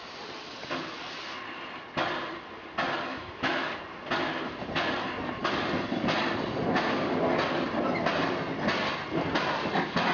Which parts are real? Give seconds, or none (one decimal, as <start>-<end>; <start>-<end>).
0.0-3.1; 3.7-10.1